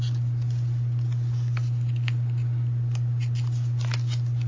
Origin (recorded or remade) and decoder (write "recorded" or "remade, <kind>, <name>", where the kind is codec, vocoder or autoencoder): recorded